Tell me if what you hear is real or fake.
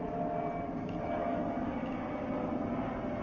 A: real